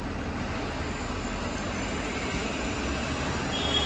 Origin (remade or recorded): recorded